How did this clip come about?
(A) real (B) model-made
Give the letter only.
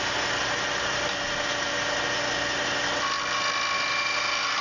A